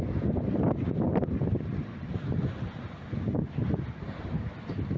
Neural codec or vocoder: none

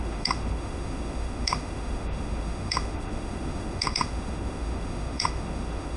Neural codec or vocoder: autoencoder, DAC-VAE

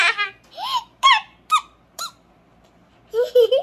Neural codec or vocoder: none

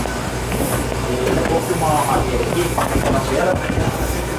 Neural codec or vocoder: none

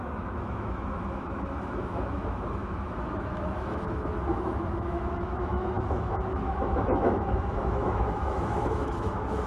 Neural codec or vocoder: autoencoder, DAC-VAE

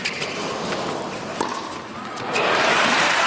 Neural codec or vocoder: none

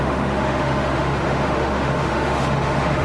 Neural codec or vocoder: autoencoder, DAC-VAE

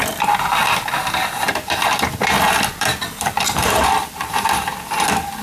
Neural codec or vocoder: none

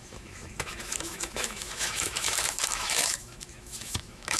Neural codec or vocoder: autoencoder, DAC-VAE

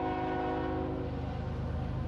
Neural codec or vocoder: none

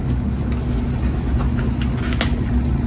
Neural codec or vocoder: none